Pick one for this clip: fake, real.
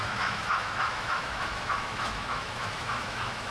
fake